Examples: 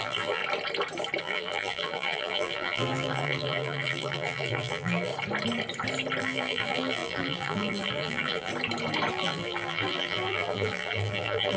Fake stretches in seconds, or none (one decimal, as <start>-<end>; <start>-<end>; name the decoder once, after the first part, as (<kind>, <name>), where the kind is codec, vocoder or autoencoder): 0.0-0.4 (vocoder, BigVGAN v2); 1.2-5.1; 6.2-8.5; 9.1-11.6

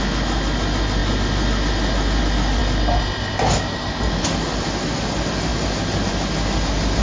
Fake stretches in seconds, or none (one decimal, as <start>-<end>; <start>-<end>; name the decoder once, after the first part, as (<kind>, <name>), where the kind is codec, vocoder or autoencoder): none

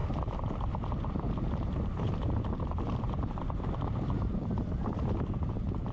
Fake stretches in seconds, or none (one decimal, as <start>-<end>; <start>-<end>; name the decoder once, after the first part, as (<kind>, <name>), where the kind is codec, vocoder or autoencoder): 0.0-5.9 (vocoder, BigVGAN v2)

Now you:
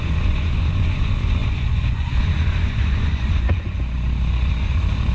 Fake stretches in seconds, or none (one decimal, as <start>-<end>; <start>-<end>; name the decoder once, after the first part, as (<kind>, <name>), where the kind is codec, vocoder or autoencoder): 0.0-5.1 (vocoder, Vocos)

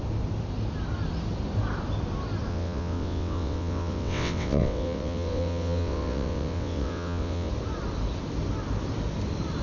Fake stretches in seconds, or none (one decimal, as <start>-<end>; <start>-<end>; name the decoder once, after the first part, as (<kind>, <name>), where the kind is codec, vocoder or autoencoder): 2.5-7.5 (vocoder, WaveNeXt)

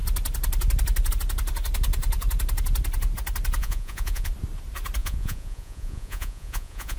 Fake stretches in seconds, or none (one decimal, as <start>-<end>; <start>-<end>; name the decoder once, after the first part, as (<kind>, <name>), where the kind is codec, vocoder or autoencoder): 3.6-4.3 (vocoder, Vocos); 5.0-7.0

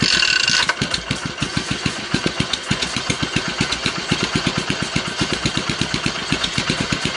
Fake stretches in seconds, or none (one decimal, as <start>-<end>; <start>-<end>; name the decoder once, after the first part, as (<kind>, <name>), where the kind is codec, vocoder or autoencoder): 1.4-5.5 (vocoder, Vocos); 6.2-7.2

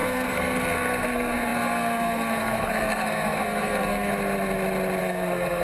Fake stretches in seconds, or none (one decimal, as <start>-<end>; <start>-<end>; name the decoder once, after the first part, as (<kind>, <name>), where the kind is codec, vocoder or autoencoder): 0.0-4.1 (codec, SNAC); 5.0-5.6